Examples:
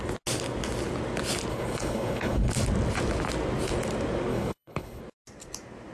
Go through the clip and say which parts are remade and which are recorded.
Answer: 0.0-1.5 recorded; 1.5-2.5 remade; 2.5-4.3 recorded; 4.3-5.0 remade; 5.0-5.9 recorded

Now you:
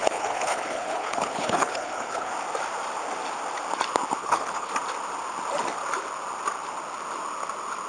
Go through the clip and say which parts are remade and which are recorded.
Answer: 0.0-2.3 remade; 2.3-4.2 recorded; 4.2-4.7 remade; 4.7-7.9 recorded

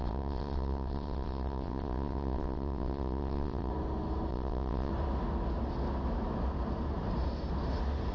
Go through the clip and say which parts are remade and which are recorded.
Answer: 0.0-3.7 remade; 3.7-4.3 recorded; 4.3-4.9 remade; 4.9-8.1 recorded

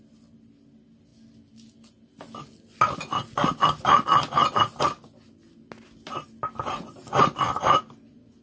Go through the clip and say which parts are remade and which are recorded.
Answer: 0.0-8.4 recorded